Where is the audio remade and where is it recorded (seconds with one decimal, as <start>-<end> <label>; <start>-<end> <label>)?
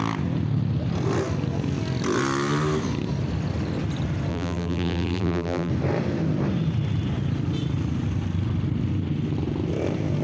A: 0.0-4.3 recorded; 4.3-5.7 remade; 5.7-10.2 recorded